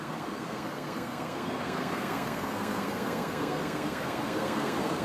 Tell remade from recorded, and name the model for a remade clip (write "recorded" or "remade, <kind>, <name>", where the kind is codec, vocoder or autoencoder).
remade, codec, SNAC